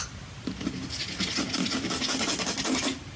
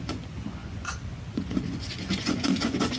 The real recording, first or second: first